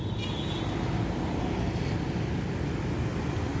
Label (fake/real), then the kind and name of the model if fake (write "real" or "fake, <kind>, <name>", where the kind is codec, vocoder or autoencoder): real